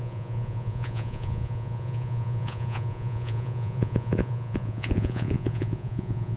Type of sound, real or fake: fake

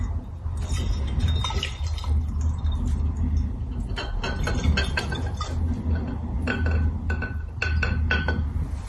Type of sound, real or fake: real